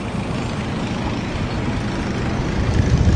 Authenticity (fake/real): real